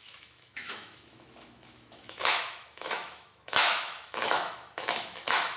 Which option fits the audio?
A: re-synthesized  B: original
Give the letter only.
A